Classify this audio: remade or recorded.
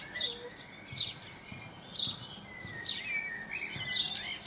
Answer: recorded